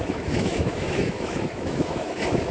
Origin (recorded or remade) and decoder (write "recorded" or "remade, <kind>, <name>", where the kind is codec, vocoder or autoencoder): remade, autoencoder, DAC-VAE